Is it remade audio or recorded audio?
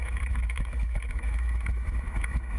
remade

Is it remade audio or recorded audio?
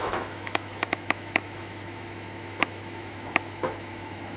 remade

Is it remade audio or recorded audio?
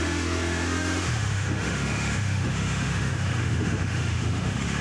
remade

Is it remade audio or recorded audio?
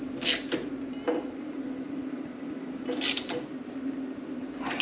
recorded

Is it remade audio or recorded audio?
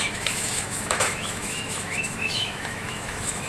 remade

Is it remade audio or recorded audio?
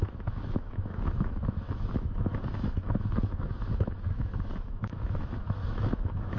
remade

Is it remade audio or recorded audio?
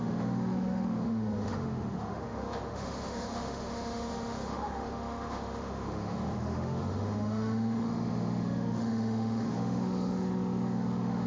remade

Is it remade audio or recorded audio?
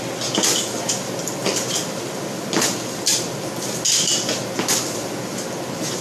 recorded